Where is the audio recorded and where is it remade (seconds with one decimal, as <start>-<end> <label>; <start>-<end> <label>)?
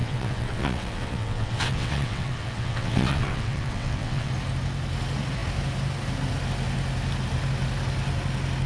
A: 0.0-4.3 remade; 4.3-8.7 recorded